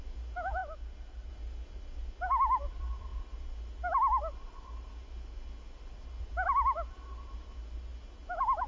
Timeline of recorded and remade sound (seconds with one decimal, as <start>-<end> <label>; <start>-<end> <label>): 0.0-8.7 recorded